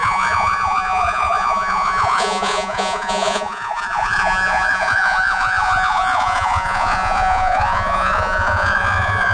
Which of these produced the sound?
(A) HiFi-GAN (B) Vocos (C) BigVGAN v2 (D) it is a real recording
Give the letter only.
B